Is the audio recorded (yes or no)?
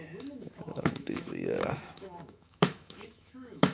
no